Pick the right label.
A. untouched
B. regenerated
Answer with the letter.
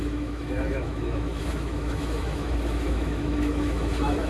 B